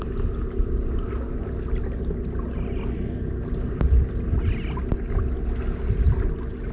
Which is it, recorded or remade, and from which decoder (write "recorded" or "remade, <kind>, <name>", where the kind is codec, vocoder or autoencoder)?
recorded